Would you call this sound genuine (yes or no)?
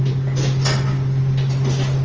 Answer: yes